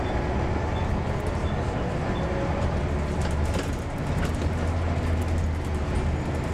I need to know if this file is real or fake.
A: real